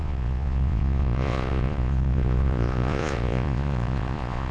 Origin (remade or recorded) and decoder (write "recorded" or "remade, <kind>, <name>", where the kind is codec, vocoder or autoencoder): remade, vocoder, Vocos